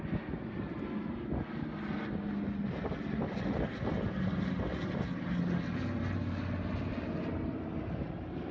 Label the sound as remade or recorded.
recorded